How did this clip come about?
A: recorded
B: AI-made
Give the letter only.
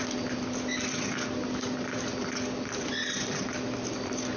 A